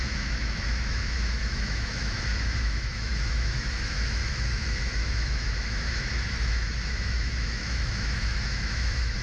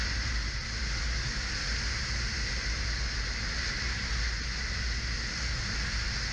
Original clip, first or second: second